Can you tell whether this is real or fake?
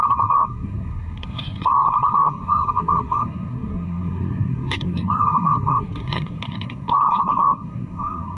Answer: fake